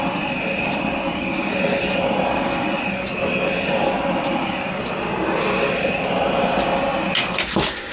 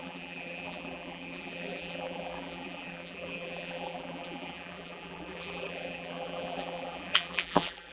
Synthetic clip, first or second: second